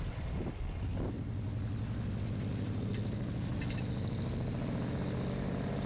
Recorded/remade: recorded